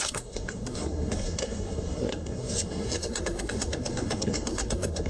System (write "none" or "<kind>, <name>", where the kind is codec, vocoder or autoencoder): codec, SNAC